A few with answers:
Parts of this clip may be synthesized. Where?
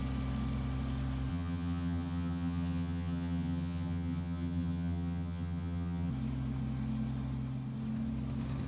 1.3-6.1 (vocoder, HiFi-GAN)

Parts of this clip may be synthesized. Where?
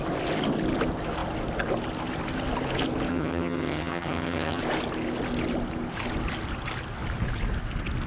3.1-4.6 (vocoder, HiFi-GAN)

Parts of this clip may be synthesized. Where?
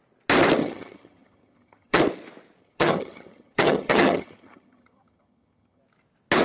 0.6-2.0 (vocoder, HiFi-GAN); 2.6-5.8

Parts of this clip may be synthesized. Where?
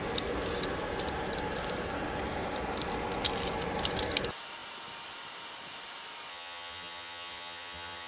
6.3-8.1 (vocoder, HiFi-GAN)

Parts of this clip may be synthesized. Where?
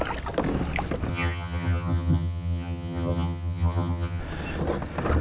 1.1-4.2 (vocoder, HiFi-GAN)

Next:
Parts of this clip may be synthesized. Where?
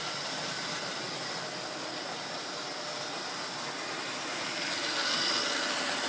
none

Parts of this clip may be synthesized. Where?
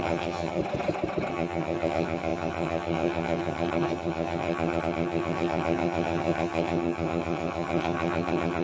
0.0-0.6 (vocoder, HiFi-GAN); 1.3-8.6